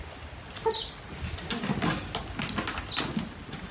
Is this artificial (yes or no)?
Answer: no